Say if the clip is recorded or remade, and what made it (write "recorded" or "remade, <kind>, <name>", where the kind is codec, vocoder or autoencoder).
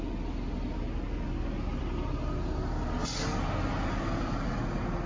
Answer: recorded